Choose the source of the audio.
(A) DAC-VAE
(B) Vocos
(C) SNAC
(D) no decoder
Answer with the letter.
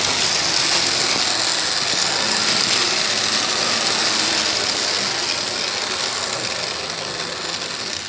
D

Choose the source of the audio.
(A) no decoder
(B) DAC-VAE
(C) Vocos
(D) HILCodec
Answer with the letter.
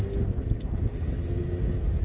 A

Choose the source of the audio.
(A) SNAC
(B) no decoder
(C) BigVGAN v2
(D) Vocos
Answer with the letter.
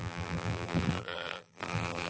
C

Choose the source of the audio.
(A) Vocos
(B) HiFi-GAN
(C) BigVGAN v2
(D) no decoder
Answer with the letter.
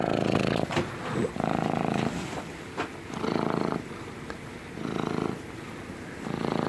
D